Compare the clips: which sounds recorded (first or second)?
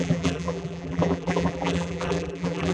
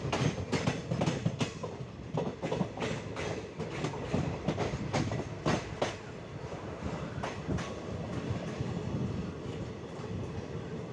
second